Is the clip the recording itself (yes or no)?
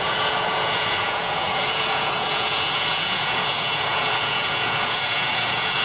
no